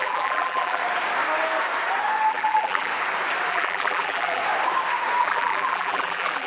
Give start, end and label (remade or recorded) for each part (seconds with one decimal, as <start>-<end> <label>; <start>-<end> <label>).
0.0-0.8 remade; 0.8-2.3 recorded; 2.3-2.9 remade; 2.9-3.5 recorded; 3.5-4.4 remade; 4.4-5.2 recorded; 5.2-6.5 remade